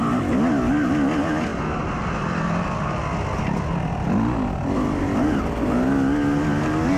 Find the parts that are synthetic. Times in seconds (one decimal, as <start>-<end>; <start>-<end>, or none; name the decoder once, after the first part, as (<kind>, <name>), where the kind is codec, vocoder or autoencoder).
none